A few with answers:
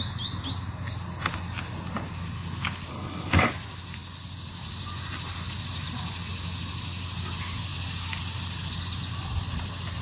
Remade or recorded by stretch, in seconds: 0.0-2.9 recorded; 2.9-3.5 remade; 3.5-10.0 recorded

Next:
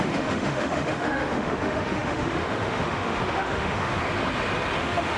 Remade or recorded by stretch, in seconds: 0.0-4.0 remade; 4.0-4.8 recorded; 4.8-5.2 remade

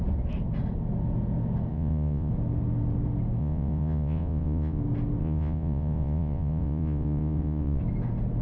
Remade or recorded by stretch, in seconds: 0.0-1.7 recorded; 1.7-2.3 remade; 2.3-3.4 recorded; 3.4-4.8 remade; 4.8-5.2 recorded; 5.2-7.8 remade; 7.8-8.4 recorded